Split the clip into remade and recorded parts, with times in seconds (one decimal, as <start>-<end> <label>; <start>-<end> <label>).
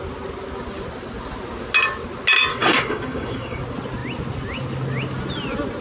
0.0-2.5 recorded; 2.5-3.6 remade; 3.6-5.8 recorded